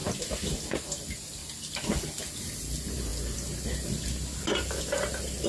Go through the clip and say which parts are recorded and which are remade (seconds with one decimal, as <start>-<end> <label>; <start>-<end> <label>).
0.0-0.5 remade; 0.5-1.4 recorded; 1.4-2.2 remade; 2.2-5.5 recorded